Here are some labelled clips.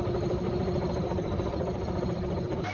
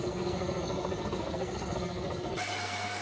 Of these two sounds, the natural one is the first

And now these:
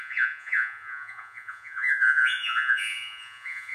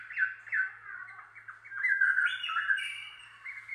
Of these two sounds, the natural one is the second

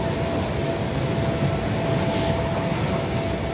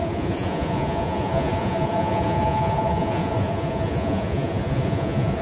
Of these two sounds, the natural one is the first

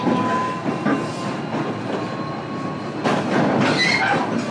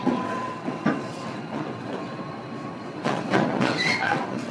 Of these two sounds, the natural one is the first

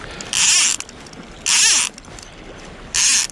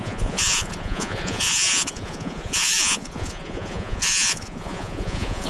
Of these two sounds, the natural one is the first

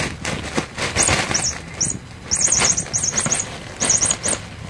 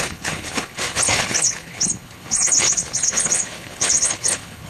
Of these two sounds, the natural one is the first